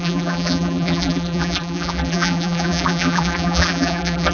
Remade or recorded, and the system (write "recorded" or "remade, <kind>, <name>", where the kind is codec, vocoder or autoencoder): remade, vocoder, BigVGAN v2